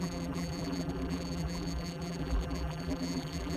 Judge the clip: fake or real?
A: fake